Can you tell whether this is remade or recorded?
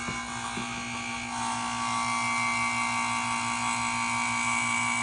recorded